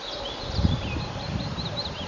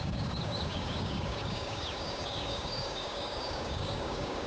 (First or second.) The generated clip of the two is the second